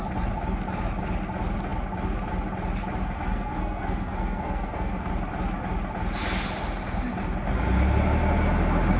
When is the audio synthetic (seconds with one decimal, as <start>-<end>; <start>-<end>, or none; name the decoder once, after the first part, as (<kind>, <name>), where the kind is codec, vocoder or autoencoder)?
3.0-5.1 (codec, SNAC)